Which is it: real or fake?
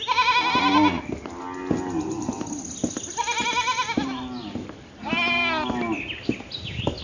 real